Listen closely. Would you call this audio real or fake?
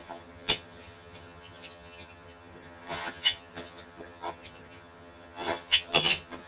fake